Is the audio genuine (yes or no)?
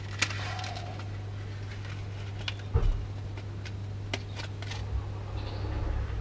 yes